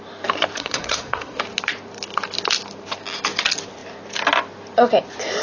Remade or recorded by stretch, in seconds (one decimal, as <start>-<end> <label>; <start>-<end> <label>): 0.0-0.6 recorded; 0.6-1.4 remade; 1.4-5.4 recorded